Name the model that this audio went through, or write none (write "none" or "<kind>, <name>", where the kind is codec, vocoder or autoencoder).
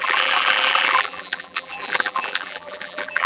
vocoder, BigVGAN v2